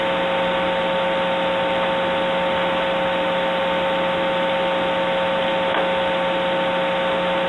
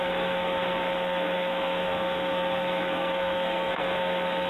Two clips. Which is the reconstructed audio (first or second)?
second